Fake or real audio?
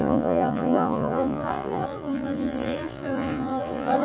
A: fake